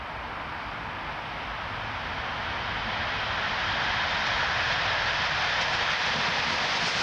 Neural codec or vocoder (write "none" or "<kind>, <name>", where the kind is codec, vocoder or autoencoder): none